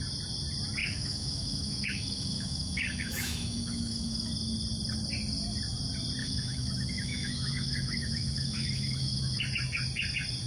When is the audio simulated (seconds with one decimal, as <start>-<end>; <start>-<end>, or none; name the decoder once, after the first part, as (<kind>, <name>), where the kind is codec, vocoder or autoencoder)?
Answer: 0.8-4.3 (autoencoder, DAC-VAE); 6.2-9.4